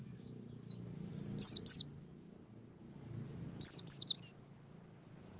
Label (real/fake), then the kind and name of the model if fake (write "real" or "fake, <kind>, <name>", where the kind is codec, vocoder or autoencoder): real